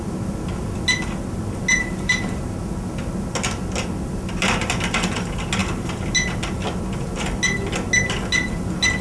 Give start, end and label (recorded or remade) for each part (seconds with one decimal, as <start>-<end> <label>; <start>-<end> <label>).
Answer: 0.0-1.7 recorded; 1.7-2.4 remade; 2.4-9.0 recorded